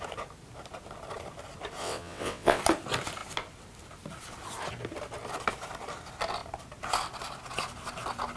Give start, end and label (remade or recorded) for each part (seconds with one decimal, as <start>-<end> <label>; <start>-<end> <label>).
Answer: 0.0-1.8 recorded; 1.8-2.6 remade; 2.6-8.4 recorded